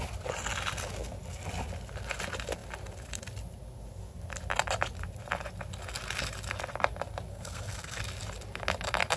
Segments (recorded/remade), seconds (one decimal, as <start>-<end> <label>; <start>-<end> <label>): 0.0-7.3 recorded; 7.3-8.0 remade; 8.0-9.2 recorded